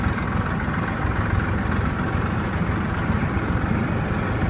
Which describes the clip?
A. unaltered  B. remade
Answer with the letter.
A